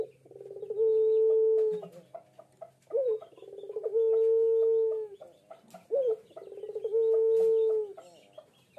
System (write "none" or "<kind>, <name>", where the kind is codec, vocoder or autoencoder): none